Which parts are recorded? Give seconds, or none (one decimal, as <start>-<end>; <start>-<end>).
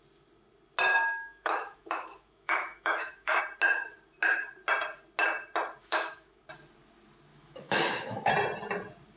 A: 0.0-0.9; 3.4-5.8; 6.4-7.3; 8.3-9.2